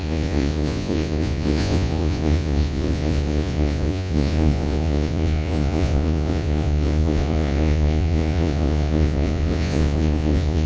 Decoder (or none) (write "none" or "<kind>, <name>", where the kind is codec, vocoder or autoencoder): vocoder, Vocos